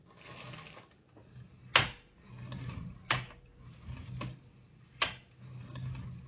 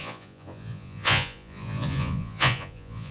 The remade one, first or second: second